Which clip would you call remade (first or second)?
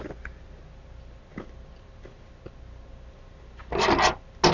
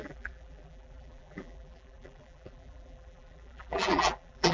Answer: second